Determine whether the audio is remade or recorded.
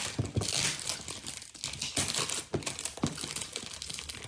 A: recorded